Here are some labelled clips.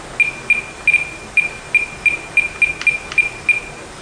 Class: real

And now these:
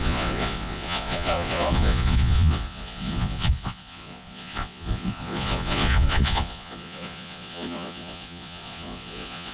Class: fake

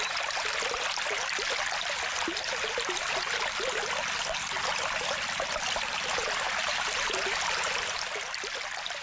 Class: real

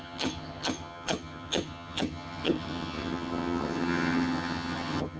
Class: fake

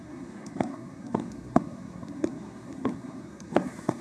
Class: fake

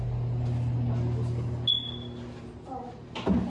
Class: real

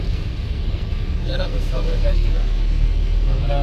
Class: fake